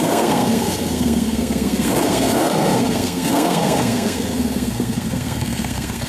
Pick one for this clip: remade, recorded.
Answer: remade